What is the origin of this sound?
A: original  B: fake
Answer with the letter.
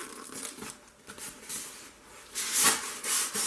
A